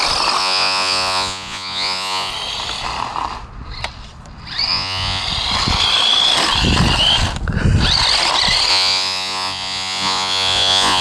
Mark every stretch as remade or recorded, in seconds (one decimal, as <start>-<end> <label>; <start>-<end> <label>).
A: 0.0-0.4 recorded; 0.4-2.3 remade; 2.3-4.7 recorded; 4.7-5.2 remade; 5.2-8.7 recorded; 8.7-11.0 remade